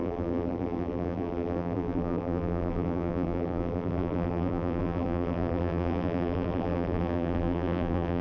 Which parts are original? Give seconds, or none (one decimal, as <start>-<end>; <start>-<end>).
none